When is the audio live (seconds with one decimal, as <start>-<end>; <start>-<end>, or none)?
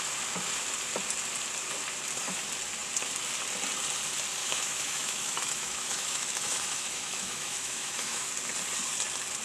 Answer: 0.0-4.4; 8.3-9.4